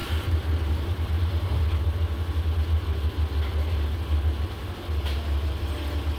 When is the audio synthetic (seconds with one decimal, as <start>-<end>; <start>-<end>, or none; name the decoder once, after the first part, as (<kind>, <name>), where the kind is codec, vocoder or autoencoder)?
0.0-1.6 (vocoder, BigVGAN v2)